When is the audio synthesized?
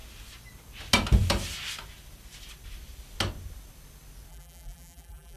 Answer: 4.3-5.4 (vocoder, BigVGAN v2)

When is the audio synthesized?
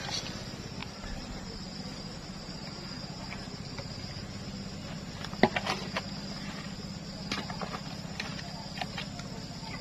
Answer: 0.8-2.7 (vocoder, BigVGAN v2)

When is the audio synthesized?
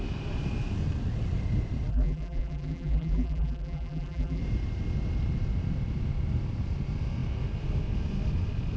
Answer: 1.9-4.4 (vocoder, BigVGAN v2)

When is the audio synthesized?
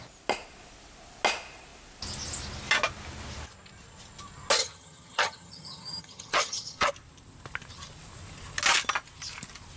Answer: 4.6-6.9 (vocoder, HiFi-GAN)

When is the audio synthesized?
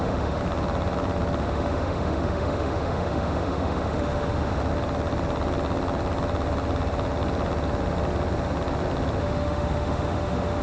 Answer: 0.0-0.4 (autoencoder, DAC-VAE); 1.4-4.6; 9.2-10.6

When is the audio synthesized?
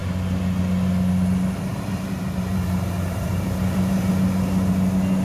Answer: 1.7-4.1 (vocoder, BigVGAN v2)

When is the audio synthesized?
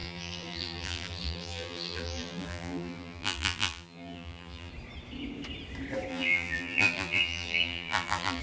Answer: 0.0-4.7 (vocoder, BigVGAN v2); 6.1-8.4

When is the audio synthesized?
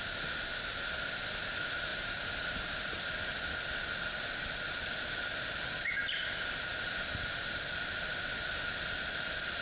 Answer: 6.0-7.5 (vocoder, BigVGAN v2)